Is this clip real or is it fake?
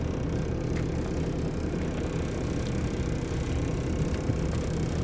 real